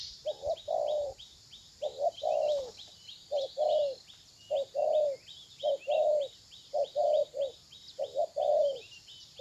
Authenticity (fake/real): real